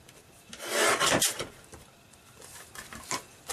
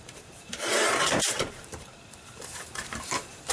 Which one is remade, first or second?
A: second